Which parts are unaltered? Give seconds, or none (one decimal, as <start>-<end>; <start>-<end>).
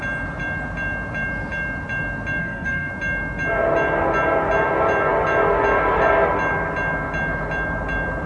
0.0-2.4; 2.9-8.3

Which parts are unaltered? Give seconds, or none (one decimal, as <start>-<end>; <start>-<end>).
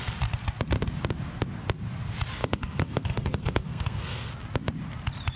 0.0-2.4; 4.3-5.4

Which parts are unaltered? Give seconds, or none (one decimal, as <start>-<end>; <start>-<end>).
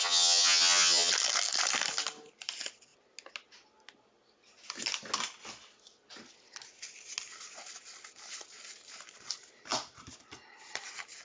1.1-11.2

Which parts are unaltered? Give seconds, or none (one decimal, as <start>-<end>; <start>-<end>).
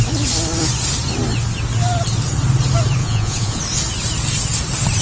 0.0-3.0; 3.6-5.0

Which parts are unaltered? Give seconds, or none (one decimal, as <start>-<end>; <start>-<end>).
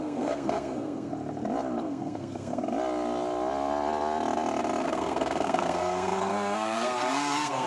1.1-1.8; 2.6-4.8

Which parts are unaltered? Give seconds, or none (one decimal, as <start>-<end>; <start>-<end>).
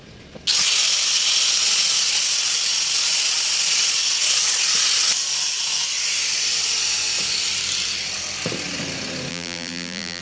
0.0-9.3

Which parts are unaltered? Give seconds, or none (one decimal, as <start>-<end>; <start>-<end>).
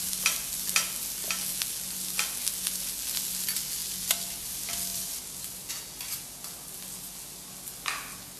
0.0-4.9; 5.7-8.4